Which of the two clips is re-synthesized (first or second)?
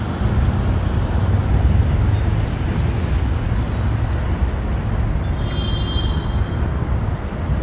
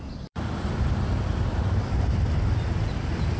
second